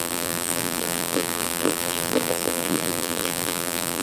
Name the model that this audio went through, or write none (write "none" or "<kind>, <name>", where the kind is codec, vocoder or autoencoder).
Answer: vocoder, BigVGAN v2